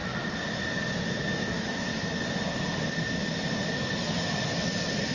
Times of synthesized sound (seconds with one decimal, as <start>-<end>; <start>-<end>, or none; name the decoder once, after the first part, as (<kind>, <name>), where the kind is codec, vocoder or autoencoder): 1.3-1.9 (autoencoder, DAC-VAE)